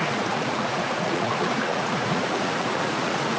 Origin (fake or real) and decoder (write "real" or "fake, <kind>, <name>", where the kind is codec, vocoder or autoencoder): fake, vocoder, Vocos